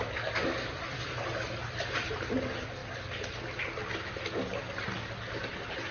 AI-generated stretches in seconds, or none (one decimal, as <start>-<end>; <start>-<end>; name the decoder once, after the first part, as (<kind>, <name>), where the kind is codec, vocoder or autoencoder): none